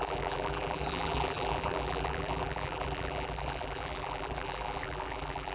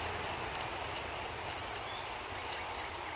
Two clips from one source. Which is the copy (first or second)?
first